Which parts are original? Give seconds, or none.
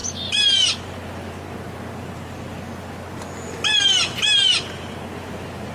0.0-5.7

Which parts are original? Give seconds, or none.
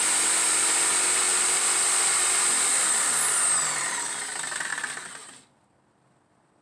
0.0-6.6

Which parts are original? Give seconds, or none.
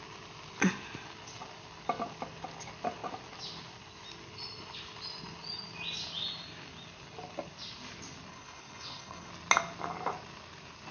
0.0-8.3; 9.3-10.9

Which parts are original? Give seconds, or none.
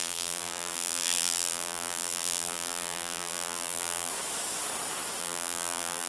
4.1-5.2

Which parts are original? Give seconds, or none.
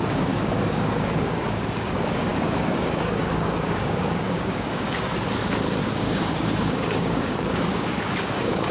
5.1-5.8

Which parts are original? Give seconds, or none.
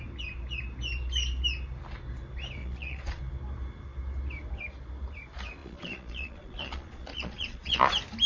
0.0-2.6; 3.2-5.6; 7.9-8.3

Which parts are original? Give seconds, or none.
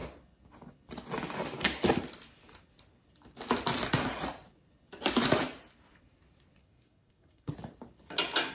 0.0-6.6; 7.5-8.5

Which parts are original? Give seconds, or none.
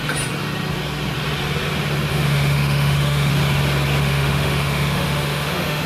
0.0-2.1; 3.3-4.0